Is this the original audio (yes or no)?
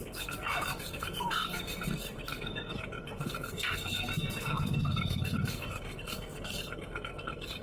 no